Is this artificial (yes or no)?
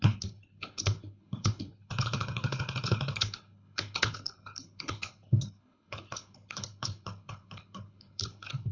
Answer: yes